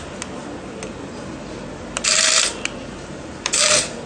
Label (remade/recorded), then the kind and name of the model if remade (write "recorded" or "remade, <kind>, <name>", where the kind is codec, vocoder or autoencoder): recorded